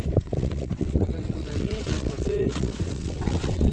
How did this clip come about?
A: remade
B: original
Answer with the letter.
A